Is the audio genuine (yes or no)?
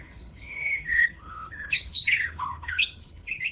no